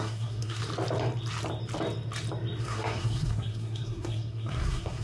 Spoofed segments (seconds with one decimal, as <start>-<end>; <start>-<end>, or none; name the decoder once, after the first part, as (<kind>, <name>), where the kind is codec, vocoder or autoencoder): 0.0-0.6 (codec, SNAC); 2.6-5.0